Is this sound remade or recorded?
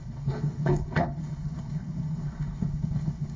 remade